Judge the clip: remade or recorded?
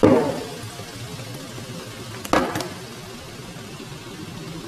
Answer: recorded